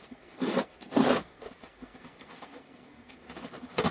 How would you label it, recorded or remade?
remade